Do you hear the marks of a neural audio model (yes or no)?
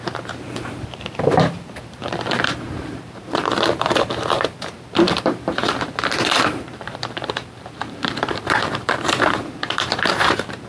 yes